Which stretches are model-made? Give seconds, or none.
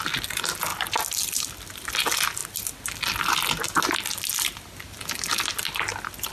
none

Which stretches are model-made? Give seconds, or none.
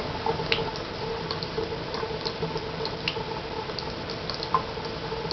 none